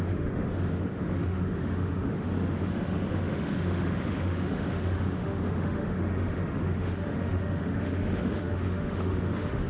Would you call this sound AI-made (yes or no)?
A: yes